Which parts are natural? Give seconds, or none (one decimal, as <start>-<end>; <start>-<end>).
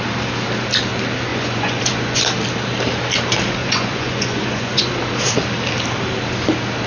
0.0-1.3; 2.2-3.6; 4.9-6.9